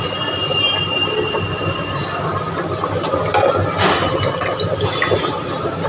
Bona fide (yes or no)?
yes